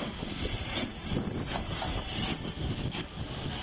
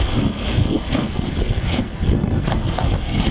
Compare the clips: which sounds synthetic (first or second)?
second